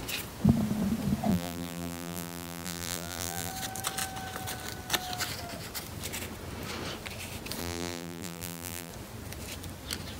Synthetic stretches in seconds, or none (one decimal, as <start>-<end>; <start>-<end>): 1.3-3.5; 7.6-8.9